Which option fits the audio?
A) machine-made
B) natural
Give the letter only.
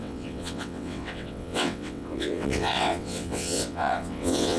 A